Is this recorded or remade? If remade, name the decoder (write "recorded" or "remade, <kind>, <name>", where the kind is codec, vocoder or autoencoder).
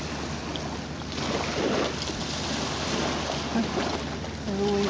recorded